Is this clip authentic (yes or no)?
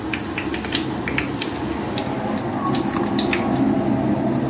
yes